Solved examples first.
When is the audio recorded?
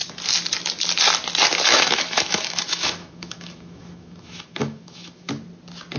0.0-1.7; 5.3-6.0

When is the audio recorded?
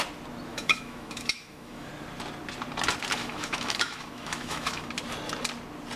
0.0-0.5; 1.9-3.2; 4.9-6.0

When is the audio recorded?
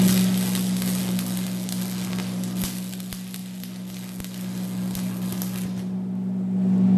0.0-7.0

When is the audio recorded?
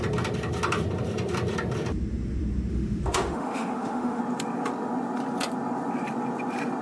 0.0-2.7; 4.2-6.8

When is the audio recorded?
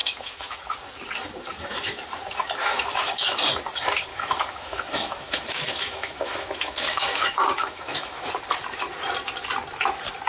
0.6-1.5; 2.0-2.6; 3.4-4.1; 8.3-10.3